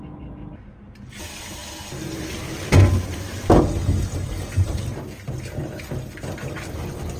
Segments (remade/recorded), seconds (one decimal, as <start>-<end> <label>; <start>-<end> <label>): 0.0-7.2 recorded